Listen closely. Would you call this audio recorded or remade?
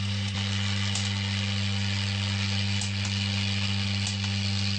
recorded